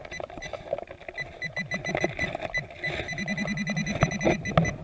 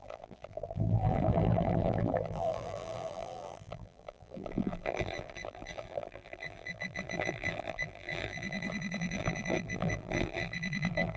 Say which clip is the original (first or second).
first